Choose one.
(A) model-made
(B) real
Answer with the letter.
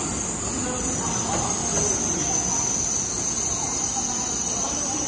B